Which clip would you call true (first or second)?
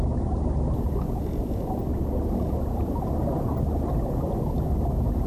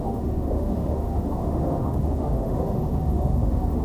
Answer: first